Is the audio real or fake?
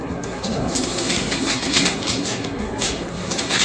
fake